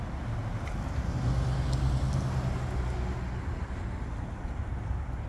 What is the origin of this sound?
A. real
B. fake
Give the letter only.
A